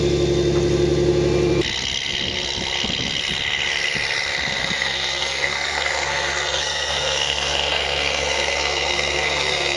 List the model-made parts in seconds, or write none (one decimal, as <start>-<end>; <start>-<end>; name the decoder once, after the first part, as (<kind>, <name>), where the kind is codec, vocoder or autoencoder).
4.6-9.8 (codec, SNAC)